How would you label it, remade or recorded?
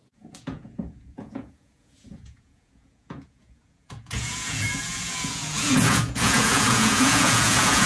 remade